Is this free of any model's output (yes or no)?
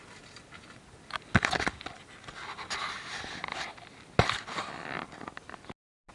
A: yes